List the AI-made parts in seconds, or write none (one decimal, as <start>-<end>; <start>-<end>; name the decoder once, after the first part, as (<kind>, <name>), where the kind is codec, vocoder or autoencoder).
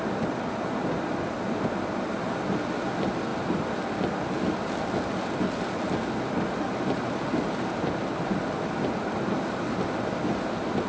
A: none